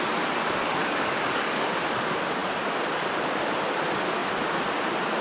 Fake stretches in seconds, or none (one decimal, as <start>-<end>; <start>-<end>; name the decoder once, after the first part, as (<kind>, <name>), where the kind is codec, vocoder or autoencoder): 0.8-1.8 (codec, DAC)